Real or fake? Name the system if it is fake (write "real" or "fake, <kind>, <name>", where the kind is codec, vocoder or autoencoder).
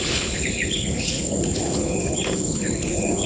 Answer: fake, codec, HILCodec